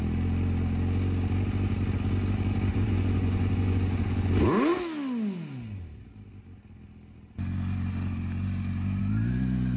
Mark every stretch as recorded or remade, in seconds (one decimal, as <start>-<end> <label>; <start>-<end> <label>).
0.0-2.7 recorded; 2.7-4.3 remade; 4.3-9.8 recorded